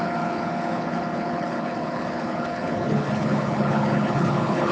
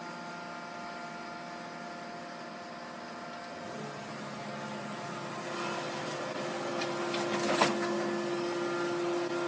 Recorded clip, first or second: second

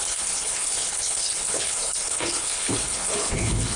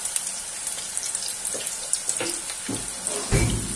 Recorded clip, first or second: second